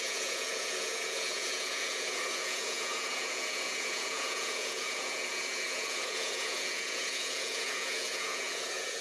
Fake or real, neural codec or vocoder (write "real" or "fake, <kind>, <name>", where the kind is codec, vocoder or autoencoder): fake, vocoder, Vocos